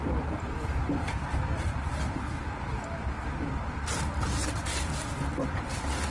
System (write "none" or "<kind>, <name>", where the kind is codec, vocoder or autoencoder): none